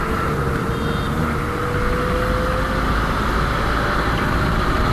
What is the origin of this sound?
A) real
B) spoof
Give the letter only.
A